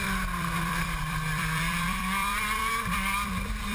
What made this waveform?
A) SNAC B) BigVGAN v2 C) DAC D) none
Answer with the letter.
B